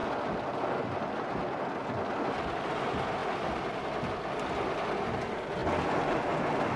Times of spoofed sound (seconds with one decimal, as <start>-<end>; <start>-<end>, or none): none